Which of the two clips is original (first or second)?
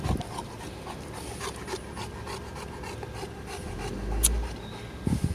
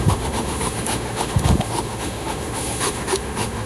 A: first